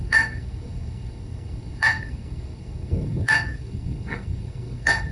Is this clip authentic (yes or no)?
no